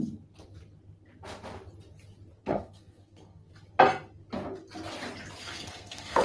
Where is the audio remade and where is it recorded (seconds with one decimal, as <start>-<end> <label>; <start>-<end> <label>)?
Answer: 0.0-2.4 recorded; 2.4-3.5 remade; 3.5-5.4 recorded; 5.4-6.2 remade